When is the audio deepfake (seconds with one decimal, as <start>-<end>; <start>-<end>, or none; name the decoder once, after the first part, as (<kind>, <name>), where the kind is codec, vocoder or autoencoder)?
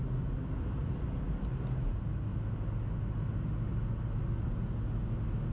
none